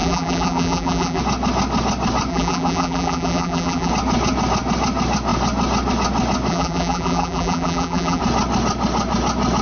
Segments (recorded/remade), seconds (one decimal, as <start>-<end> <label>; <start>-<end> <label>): 0.0-1.2 remade; 1.2-2.3 recorded; 2.3-3.9 remade; 3.9-6.5 recorded; 6.5-8.2 remade; 8.2-9.6 recorded